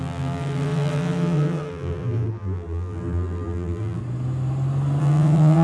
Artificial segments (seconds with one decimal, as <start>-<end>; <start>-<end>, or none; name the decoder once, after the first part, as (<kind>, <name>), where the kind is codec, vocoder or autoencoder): 0.0-4.0 (vocoder, BigVGAN v2); 5.0-5.6